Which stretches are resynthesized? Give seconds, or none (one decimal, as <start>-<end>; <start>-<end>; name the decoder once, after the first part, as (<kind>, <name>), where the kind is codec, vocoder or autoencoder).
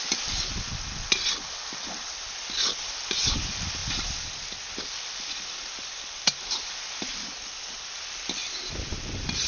3.8-6.6 (vocoder, BigVGAN v2); 8.4-9.0